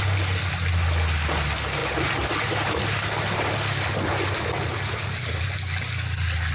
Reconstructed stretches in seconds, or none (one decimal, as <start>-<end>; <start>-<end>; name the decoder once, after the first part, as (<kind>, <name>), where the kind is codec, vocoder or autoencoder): none